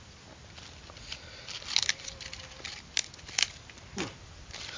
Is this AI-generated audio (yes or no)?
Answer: no